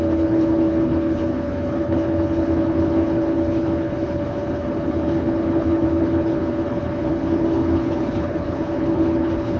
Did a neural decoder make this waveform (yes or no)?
yes